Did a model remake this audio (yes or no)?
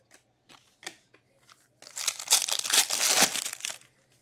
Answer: no